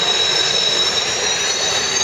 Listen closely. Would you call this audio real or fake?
fake